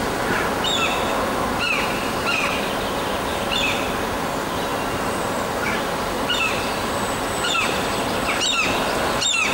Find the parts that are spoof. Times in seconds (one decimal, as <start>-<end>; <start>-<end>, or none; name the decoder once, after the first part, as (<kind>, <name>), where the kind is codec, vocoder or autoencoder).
none